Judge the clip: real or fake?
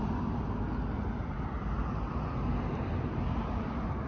real